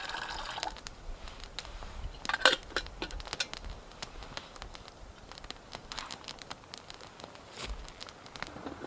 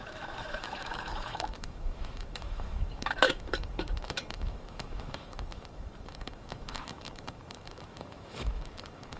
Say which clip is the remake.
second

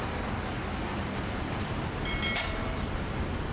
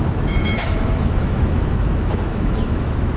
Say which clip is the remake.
second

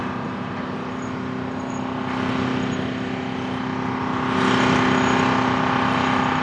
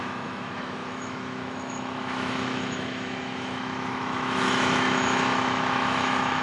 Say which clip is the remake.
second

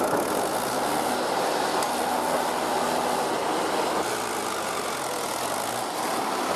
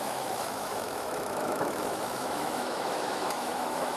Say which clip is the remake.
second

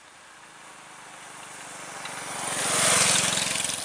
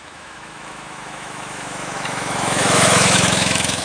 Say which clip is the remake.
second